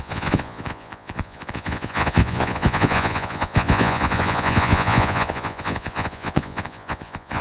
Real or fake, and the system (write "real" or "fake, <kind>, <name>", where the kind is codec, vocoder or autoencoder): fake, vocoder, Vocos